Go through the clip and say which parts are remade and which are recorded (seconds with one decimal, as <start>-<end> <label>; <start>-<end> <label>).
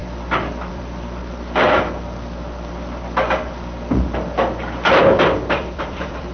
0.0-0.7 recorded; 0.7-1.2 remade; 1.2-5.0 recorded; 5.0-6.3 remade